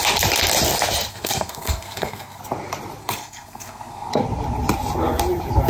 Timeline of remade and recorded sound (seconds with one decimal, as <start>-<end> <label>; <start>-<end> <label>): 0.0-1.1 recorded; 1.1-2.4 remade; 2.4-3.0 recorded; 3.0-4.1 remade; 4.1-5.7 recorded